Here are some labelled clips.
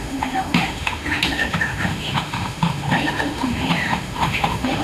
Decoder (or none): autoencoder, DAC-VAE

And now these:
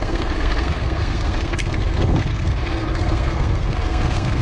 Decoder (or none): codec, SNAC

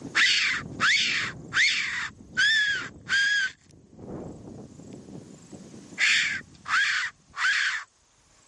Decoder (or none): none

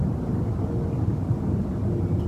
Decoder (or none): none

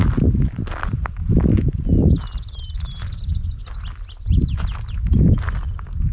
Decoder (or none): none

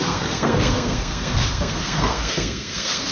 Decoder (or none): codec, SNAC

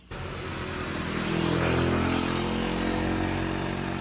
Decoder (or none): none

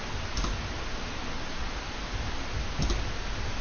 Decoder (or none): none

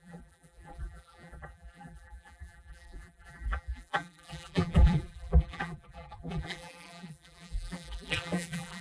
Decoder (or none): vocoder, BigVGAN v2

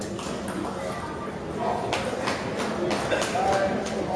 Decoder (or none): none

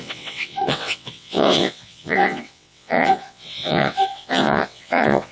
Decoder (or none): vocoder, WaveNeXt